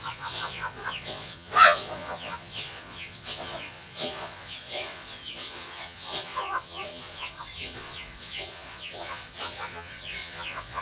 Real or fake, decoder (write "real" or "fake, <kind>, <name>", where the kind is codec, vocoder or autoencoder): fake, vocoder, Vocos